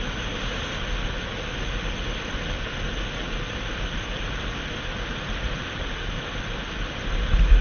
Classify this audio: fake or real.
real